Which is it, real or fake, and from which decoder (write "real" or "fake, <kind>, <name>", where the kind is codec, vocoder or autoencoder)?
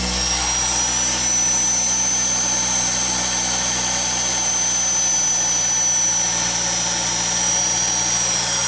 real